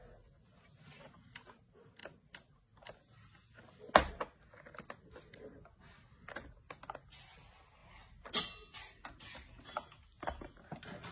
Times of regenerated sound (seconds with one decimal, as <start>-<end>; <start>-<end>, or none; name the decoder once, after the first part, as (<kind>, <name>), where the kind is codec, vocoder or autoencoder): none